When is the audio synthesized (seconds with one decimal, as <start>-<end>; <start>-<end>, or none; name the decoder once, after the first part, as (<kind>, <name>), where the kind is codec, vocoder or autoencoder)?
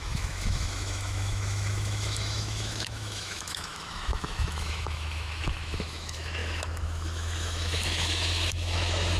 0.0-9.2 (autoencoder, DAC-VAE)